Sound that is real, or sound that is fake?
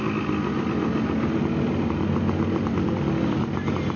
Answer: real